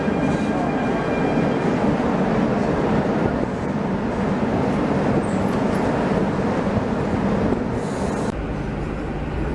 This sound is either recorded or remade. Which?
recorded